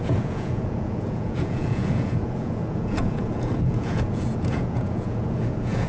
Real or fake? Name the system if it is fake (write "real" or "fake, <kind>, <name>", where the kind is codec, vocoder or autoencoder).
fake, vocoder, Vocos